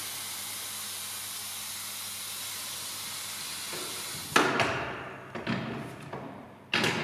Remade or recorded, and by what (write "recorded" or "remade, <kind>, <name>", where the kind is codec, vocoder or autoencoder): recorded